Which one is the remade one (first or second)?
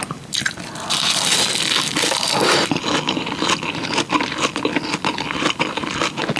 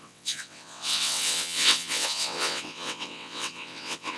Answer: second